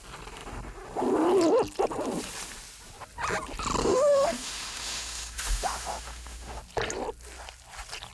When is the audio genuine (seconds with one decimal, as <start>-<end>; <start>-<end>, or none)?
0.0-3.8; 6.6-8.1